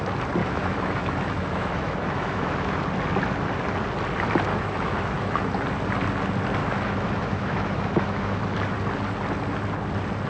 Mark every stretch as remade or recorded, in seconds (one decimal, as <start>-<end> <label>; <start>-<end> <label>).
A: 0.0-0.4 recorded; 0.4-2.8 remade; 2.8-4.5 recorded; 4.5-5.5 remade; 5.5-6.6 recorded; 6.6-8.4 remade; 8.4-10.3 recorded